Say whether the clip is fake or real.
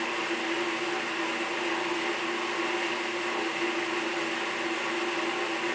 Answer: real